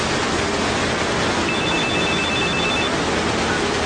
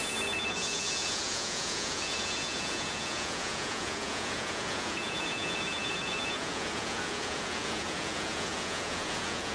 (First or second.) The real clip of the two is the first